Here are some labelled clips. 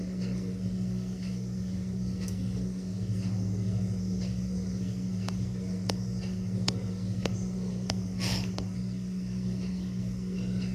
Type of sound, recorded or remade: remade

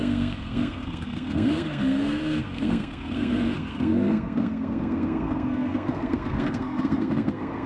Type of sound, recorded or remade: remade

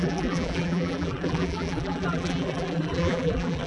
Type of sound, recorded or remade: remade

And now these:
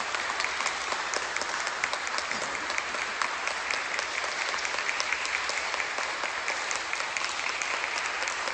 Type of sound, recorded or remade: recorded